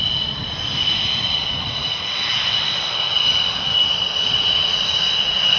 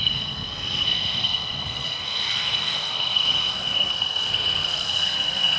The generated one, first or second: second